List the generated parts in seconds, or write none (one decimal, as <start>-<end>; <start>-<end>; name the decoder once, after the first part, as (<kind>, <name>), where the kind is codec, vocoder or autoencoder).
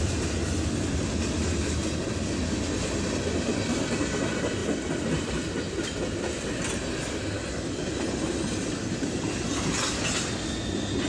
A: none